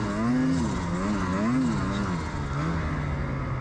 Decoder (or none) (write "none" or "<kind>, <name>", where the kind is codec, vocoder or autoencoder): none